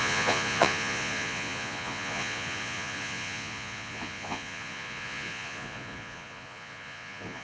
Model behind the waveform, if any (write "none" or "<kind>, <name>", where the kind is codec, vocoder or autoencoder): vocoder, Vocos